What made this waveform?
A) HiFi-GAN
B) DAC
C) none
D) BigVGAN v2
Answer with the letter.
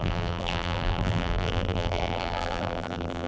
D